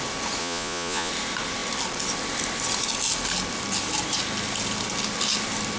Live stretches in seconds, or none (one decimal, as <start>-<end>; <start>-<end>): 0.0-0.4; 1.1-5.8

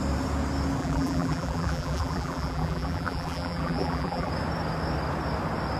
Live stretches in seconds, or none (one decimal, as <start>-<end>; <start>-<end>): 0.0-0.8; 4.3-5.8

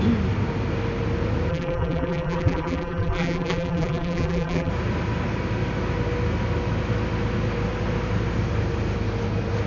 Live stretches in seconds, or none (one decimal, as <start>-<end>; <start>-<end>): 0.0-1.5; 4.7-9.7

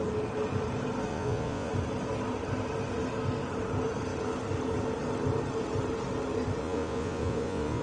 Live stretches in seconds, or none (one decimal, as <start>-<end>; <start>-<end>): 0.0-1.1; 1.7-6.6

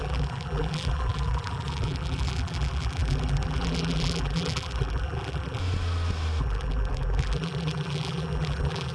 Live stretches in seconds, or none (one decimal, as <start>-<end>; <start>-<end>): 5.6-6.4

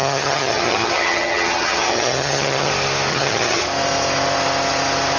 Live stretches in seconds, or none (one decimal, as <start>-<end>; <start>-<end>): 2.7-3.1; 3.6-5.2

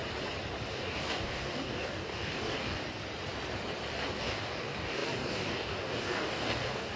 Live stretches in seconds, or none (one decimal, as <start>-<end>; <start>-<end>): 0.0-0.7; 2.8-4.2